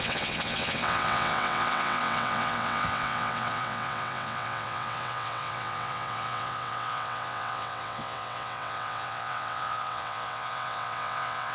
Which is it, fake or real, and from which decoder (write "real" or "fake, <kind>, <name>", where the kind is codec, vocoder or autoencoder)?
fake, vocoder, WaveNeXt